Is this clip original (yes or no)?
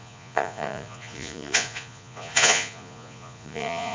no